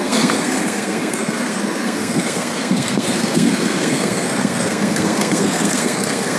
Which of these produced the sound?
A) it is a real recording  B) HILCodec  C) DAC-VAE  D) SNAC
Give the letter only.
D